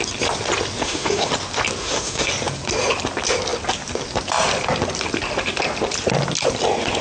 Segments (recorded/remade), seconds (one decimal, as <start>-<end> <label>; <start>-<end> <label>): 0.0-0.8 recorded; 0.8-1.3 remade; 1.3-1.8 recorded; 1.8-2.3 remade; 2.3-7.0 recorded